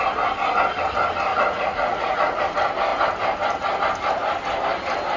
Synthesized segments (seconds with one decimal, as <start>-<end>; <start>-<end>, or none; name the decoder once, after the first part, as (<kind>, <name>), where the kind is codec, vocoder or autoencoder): 1.3-2.4 (vocoder, Vocos)